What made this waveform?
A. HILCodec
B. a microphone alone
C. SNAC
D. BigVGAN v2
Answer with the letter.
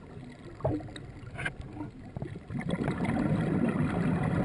B